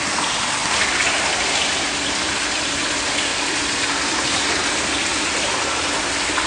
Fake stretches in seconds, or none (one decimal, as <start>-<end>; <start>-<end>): none